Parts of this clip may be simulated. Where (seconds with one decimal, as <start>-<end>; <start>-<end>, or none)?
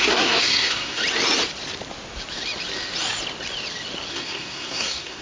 0.0-1.0; 4.1-5.2